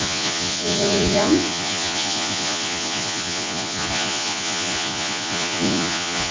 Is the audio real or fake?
fake